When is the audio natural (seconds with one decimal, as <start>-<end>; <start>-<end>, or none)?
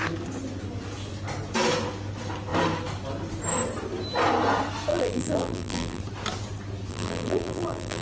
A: 0.0-4.9; 6.0-6.9